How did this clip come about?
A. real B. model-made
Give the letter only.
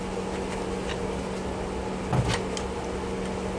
A